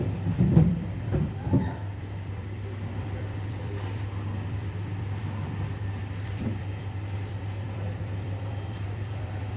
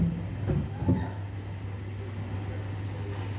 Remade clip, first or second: first